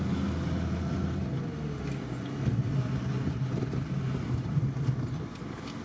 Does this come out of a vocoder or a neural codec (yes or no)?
no